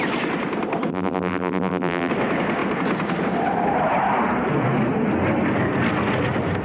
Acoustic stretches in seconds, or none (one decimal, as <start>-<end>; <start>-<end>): 0.0-0.9; 2.1-6.6